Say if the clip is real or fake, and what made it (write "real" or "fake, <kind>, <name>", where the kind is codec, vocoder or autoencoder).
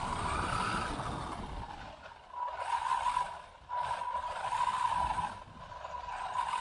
real